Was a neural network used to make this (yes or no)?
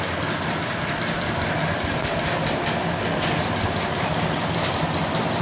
no